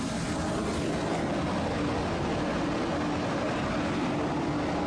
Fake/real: real